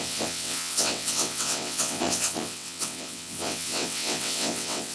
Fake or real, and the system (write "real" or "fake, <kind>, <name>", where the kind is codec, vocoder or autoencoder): fake, vocoder, WaveNeXt